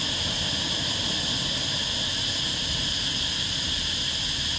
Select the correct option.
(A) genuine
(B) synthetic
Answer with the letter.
A